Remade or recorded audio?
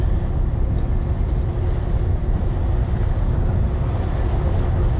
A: recorded